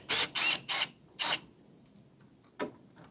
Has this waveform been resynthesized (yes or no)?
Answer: no